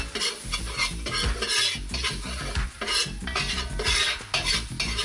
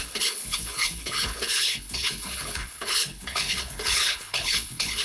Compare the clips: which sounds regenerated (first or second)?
second